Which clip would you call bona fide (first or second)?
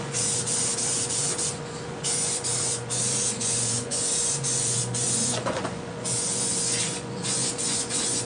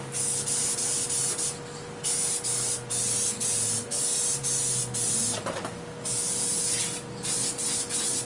second